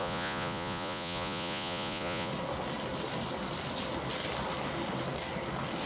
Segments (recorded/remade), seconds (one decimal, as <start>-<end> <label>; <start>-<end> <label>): 0.0-2.3 remade; 2.3-5.9 recorded